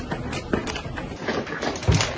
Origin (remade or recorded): recorded